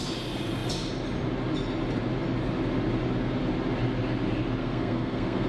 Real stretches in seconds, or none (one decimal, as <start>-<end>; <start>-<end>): 0.0-4.6